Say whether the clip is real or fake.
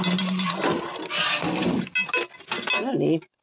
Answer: real